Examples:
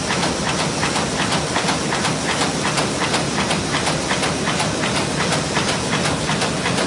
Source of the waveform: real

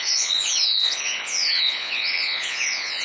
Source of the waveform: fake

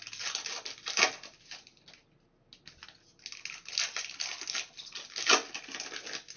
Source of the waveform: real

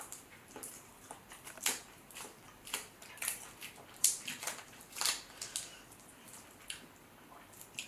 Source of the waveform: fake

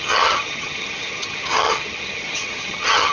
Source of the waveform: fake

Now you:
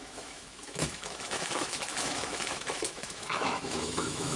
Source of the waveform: fake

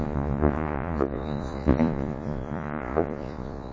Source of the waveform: fake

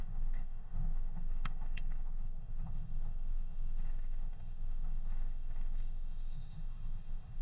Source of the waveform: fake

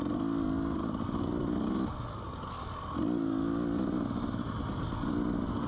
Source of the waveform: real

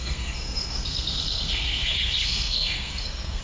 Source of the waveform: fake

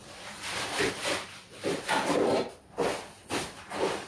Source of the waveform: fake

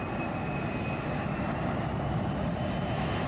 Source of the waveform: real